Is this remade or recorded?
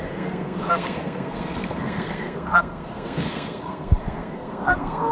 remade